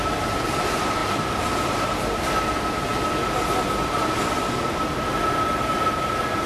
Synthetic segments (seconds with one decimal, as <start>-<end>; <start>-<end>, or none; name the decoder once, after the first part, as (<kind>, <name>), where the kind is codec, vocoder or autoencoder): 1.0-2.5 (vocoder, BigVGAN v2)